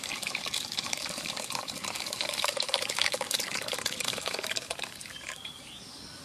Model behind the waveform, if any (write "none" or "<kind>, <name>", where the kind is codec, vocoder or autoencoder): codec, DAC